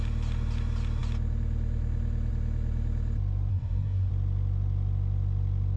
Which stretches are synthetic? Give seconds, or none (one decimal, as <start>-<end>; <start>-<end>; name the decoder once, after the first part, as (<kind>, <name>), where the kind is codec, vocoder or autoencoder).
3.5-4.1 (codec, SNAC)